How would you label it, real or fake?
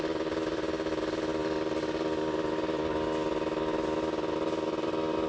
real